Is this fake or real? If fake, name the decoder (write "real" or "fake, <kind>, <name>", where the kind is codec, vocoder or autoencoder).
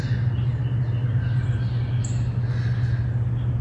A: real